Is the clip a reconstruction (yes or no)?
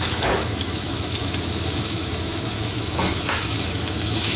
yes